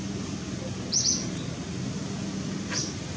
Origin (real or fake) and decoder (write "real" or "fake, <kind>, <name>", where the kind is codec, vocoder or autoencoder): real